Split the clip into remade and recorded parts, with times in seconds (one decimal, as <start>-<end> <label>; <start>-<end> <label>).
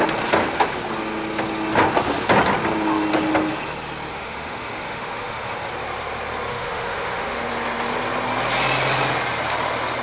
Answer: 0.0-4.1 recorded; 4.1-5.7 remade; 5.7-6.5 recorded; 6.5-7.4 remade; 7.4-10.0 recorded